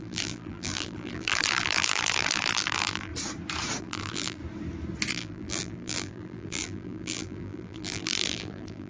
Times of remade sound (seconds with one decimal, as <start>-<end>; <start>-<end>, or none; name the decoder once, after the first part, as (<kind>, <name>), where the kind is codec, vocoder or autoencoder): 0.0-3.1 (vocoder, BigVGAN v2); 3.8-4.4; 5.1-8.9